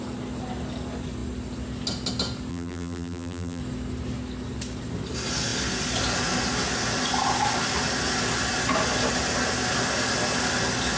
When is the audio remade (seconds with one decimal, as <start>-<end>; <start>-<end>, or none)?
2.5-3.6